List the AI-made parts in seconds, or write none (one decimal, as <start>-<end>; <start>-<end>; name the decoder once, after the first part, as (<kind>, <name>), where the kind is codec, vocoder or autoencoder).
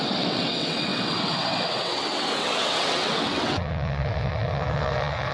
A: 0.0-5.3 (vocoder, WaveNeXt)